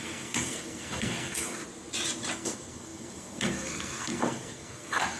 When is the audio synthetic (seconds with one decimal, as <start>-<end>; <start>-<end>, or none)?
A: 0.0-1.6; 2.3-5.2